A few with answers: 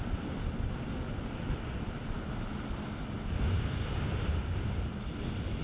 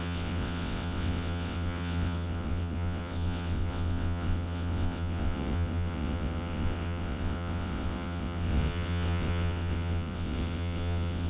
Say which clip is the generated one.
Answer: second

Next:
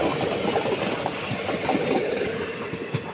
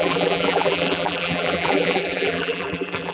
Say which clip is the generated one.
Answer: second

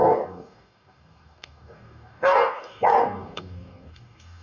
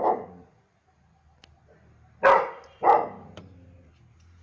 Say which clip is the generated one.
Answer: first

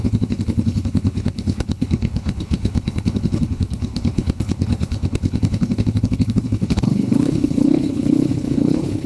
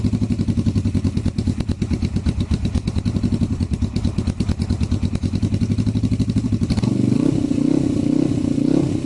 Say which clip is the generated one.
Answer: first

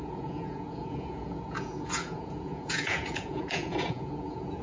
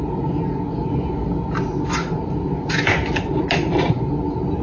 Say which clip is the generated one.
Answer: first